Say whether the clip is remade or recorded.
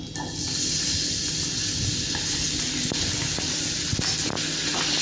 recorded